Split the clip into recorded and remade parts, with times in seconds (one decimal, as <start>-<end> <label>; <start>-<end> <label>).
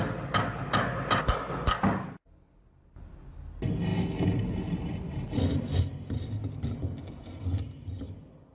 0.0-8.5 recorded